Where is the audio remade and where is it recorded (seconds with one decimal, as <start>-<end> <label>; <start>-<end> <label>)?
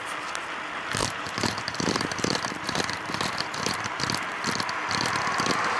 0.0-1.0 recorded; 1.0-4.0 remade; 4.0-5.8 recorded